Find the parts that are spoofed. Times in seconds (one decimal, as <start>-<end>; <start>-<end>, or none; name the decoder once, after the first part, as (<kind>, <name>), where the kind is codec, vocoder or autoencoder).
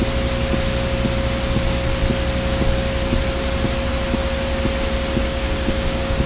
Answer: 5.2-6.3 (codec, DAC)